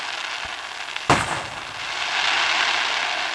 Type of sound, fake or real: real